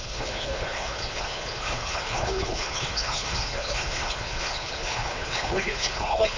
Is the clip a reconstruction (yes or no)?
yes